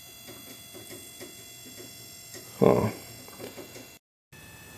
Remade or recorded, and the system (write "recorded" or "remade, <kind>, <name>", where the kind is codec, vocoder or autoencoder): recorded